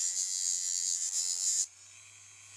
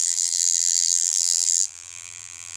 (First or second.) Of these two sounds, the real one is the first